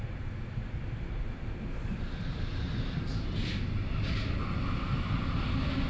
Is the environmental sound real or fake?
real